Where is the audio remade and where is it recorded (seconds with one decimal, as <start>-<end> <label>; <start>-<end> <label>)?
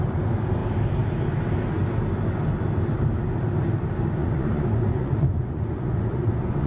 0.0-4.2 recorded; 4.2-6.7 remade